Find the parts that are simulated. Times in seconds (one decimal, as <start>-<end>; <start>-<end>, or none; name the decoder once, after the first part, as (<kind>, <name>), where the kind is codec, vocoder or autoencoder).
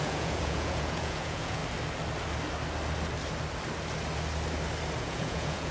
0.0-1.6 (vocoder, Vocos); 5.0-5.7